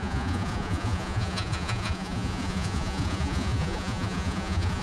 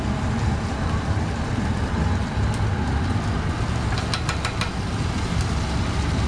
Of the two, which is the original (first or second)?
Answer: second